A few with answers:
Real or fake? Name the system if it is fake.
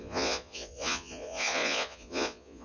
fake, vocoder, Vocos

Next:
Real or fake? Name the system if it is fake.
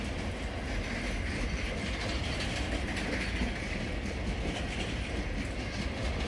real